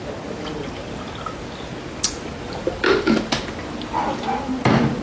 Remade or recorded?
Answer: recorded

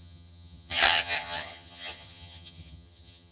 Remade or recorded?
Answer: remade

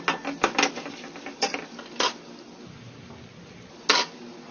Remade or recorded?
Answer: recorded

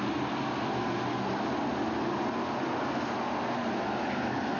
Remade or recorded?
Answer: recorded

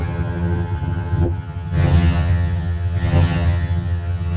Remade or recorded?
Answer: remade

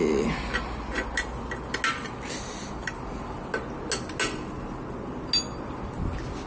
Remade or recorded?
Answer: recorded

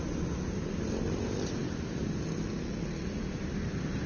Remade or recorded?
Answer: recorded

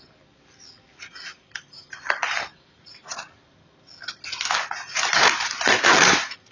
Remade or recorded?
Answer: recorded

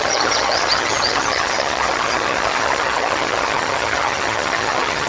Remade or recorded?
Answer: remade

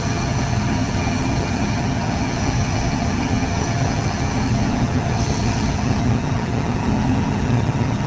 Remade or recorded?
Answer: remade